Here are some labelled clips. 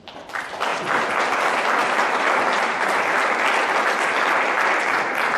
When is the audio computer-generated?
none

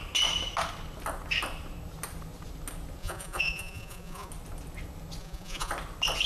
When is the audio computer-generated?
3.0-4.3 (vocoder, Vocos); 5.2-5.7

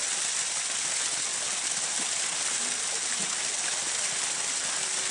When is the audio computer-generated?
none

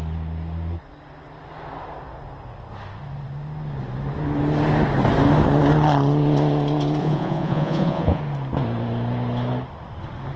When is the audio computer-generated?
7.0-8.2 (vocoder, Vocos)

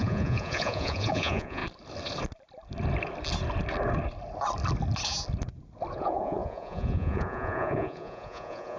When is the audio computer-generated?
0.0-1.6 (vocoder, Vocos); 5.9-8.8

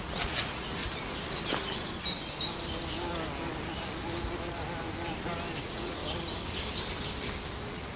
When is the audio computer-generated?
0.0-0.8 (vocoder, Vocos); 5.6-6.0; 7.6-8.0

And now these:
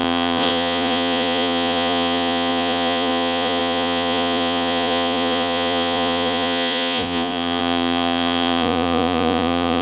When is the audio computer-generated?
0.0-9.8 (vocoder, Vocos)

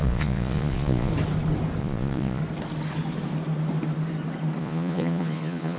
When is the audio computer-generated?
0.0-1.1 (vocoder, Vocos); 1.8-2.4; 4.6-5.8